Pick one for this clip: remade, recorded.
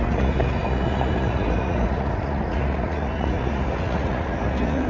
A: remade